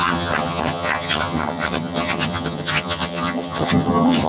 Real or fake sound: fake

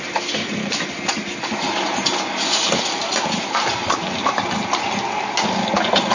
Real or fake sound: real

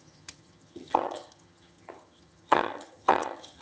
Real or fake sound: fake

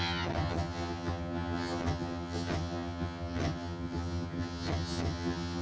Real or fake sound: fake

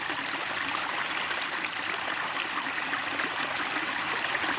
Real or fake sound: real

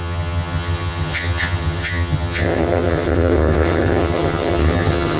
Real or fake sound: fake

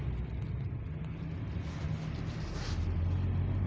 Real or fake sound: real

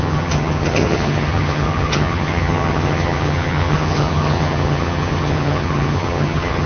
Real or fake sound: fake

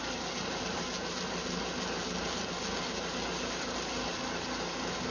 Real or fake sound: real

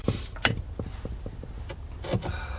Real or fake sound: real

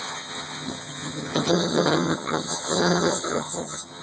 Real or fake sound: fake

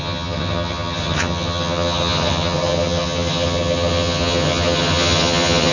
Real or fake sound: fake